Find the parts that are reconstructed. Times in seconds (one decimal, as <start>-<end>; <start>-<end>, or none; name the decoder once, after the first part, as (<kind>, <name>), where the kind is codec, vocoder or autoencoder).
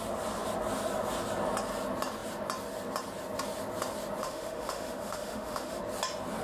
4.2-5.8 (autoencoder, DAC-VAE)